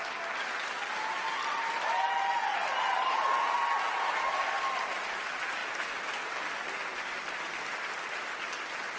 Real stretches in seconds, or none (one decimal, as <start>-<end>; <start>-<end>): 0.0-9.0